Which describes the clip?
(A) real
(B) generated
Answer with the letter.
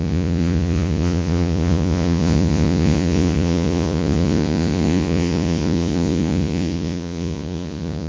B